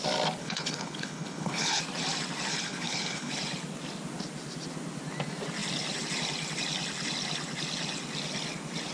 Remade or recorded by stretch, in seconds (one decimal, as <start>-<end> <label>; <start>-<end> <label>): 0.0-0.4 recorded; 0.4-1.8 remade; 1.8-2.5 recorded; 2.5-3.3 remade; 3.3-8.9 recorded